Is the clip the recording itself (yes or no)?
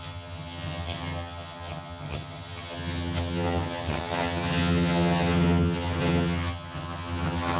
no